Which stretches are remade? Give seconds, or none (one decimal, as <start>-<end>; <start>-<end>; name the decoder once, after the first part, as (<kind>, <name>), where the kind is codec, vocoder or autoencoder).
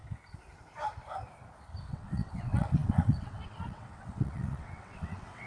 1.9-5.5 (vocoder, WaveNeXt)